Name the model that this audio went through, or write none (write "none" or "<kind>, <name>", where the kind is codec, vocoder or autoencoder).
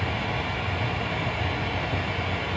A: none